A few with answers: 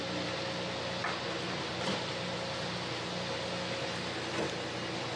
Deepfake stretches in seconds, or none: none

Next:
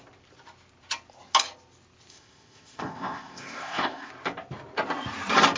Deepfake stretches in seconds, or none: 2.1-4.1 (codec, ZipCodec)

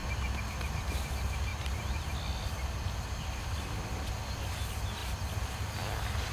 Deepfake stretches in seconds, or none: 0.0-1.1 (vocoder, BigVGAN v2); 1.5-3.4; 5.0-5.6

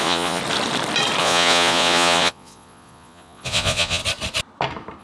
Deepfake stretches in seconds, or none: 0.0-0.4 (vocoder, Vocos); 1.2-4.0

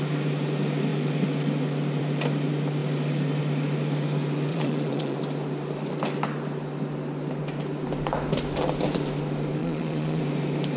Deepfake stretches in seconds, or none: 4.5-5.2 (vocoder, Vocos); 9.6-10.2